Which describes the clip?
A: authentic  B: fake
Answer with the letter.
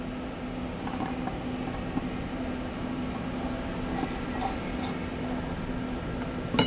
A